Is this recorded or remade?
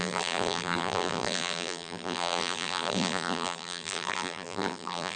remade